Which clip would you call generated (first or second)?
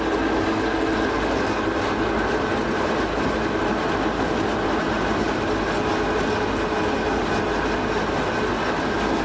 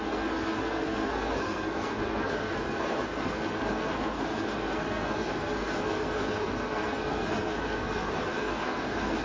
second